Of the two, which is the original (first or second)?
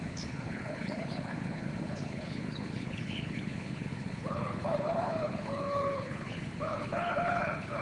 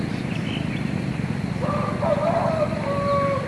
second